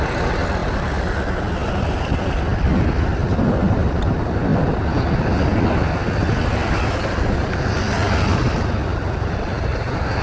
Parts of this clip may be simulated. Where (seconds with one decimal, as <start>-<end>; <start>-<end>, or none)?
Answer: none